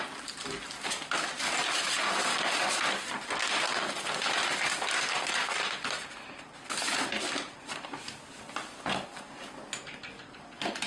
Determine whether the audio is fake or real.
real